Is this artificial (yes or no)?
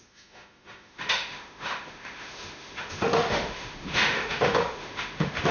yes